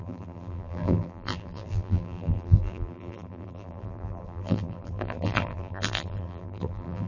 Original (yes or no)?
no